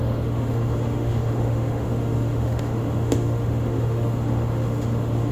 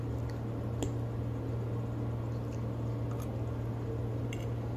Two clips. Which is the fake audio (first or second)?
first